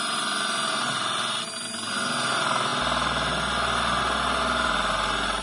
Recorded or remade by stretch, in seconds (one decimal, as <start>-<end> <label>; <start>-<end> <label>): 0.0-5.4 recorded